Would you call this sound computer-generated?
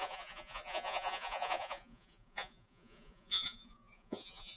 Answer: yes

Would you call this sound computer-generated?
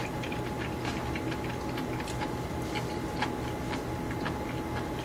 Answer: no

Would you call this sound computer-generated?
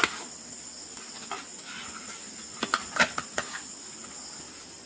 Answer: no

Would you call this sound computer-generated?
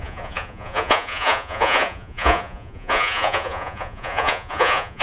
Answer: yes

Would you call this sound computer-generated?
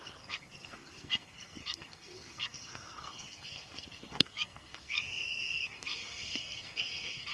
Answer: yes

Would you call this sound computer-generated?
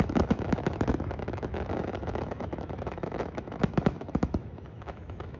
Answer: yes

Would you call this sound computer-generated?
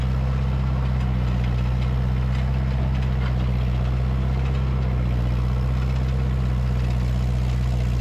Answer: no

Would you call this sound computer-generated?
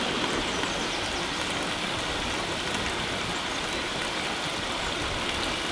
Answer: no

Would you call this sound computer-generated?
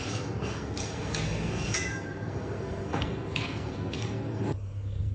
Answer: yes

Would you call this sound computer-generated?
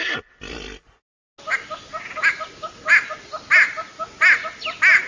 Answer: no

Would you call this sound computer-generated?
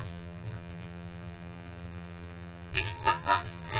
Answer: yes